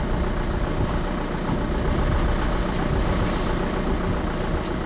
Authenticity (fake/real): real